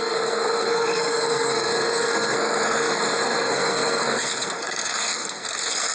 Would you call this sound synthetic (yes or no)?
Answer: yes